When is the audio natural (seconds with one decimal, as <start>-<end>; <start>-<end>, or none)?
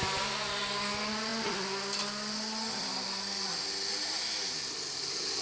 0.0-5.4